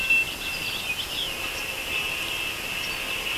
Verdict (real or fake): real